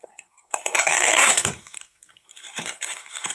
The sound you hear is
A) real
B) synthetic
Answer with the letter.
B